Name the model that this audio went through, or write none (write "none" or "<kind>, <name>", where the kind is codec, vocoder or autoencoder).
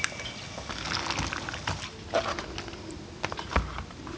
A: none